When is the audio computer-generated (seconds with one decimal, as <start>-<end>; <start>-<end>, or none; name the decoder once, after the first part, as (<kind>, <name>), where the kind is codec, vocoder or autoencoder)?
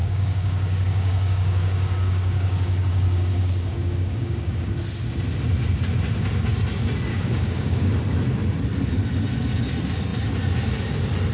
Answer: 0.0-4.7 (codec, DAC); 7.1-7.9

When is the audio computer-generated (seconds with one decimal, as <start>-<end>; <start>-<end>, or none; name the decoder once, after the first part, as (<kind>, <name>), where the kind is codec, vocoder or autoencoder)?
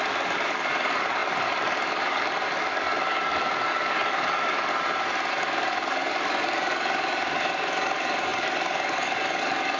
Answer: 0.0-4.7 (codec, DAC); 5.3-9.8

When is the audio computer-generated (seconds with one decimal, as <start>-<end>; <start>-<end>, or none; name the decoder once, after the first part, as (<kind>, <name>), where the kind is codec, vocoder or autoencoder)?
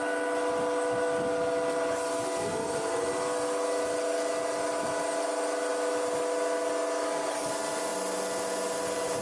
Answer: 7.0-7.5 (codec, DAC)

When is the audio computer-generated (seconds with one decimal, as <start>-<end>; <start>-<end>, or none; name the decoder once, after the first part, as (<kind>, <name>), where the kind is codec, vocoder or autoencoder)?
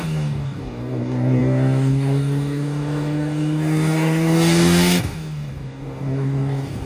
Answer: 0.0-6.9 (codec, DAC)